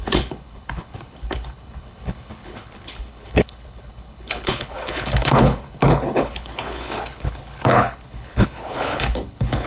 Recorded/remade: remade